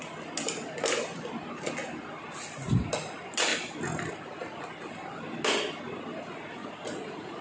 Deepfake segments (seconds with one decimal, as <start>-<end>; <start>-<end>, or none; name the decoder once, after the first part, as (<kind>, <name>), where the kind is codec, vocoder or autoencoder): 6.6-7.4 (vocoder, Vocos)